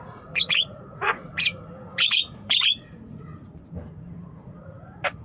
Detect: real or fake fake